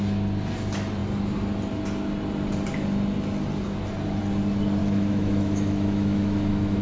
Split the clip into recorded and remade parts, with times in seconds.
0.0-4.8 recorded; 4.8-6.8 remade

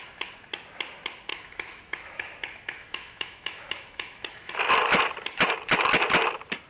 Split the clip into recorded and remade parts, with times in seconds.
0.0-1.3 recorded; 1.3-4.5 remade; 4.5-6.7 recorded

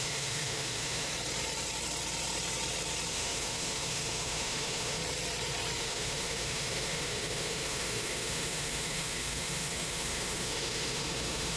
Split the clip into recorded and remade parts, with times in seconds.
0.0-1.1 remade; 1.1-3.1 recorded; 3.1-5.0 remade; 5.0-5.8 recorded; 5.8-11.6 remade

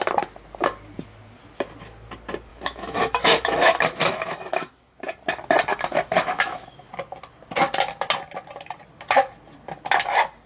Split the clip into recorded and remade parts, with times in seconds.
0.0-2.5 recorded; 2.5-5.0 remade; 5.0-5.7 recorded; 5.7-6.9 remade; 6.9-10.5 recorded

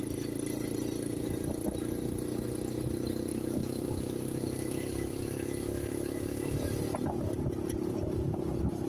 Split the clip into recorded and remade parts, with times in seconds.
0.0-3.3 recorded; 3.3-6.8 remade; 6.8-8.9 recorded

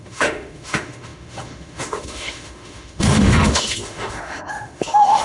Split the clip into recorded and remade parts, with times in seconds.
0.0-5.2 remade